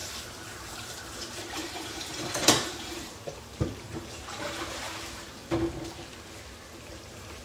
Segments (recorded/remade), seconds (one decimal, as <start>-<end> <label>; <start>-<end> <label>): 0.0-5.4 remade; 5.4-6.8 recorded; 6.8-7.4 remade